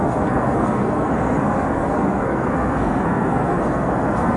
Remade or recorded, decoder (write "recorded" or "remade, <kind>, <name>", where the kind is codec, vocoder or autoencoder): remade, codec, SNAC